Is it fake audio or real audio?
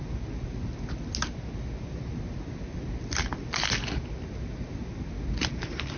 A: real